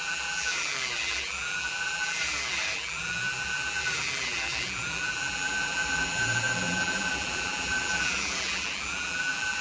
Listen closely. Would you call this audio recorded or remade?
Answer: remade